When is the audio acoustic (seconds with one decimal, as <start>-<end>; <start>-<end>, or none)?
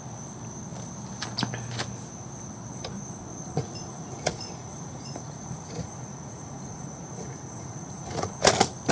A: 0.0-3.3; 8.5-8.9